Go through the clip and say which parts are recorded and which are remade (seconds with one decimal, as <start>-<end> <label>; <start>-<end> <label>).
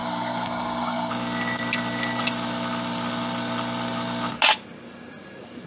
0.0-1.1 remade; 1.1-5.7 recorded